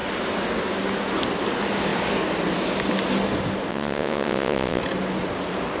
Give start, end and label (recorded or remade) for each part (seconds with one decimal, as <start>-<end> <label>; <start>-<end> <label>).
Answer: 0.0-3.7 recorded; 3.7-4.8 remade; 4.8-5.8 recorded